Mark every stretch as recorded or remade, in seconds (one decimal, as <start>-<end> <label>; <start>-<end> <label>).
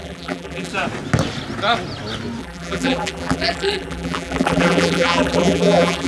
0.0-0.7 remade; 0.7-2.4 recorded; 2.4-6.1 remade